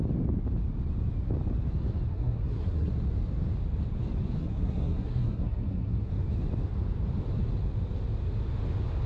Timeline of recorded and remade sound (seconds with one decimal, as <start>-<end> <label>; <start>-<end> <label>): 0.0-2.1 recorded; 2.1-2.9 remade; 2.9-4.4 recorded; 4.4-6.1 remade; 6.1-9.1 recorded